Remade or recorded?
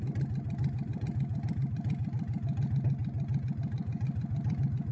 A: recorded